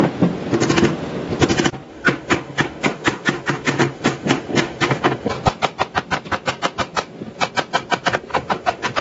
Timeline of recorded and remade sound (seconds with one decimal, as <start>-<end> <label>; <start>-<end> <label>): 0.0-1.9 recorded; 1.9-5.3 remade; 5.3-8.3 recorded; 8.3-9.0 remade